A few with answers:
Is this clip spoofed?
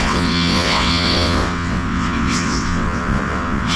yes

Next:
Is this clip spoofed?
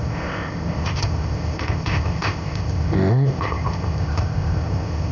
yes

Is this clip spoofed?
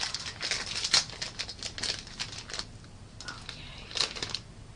no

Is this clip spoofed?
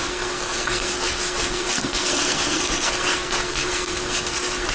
yes